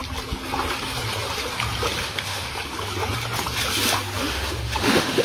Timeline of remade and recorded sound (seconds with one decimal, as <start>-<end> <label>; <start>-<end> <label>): 0.0-2.0 recorded; 2.0-2.5 remade; 2.5-4.2 recorded; 4.2-5.2 remade